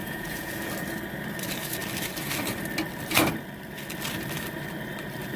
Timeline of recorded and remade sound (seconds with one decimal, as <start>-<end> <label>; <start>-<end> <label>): 0.0-0.7 remade; 0.7-5.4 recorded